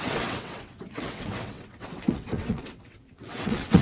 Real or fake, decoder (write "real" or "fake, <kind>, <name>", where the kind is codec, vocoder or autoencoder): fake, vocoder, WaveNeXt